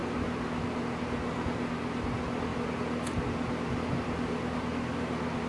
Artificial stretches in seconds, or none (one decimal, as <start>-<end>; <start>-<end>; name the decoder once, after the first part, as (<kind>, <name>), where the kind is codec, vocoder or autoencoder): none